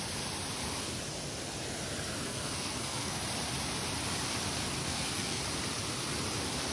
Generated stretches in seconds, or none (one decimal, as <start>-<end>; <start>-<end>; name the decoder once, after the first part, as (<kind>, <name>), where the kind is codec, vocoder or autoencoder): 2.2-3.2 (codec, SNAC); 4.8-5.4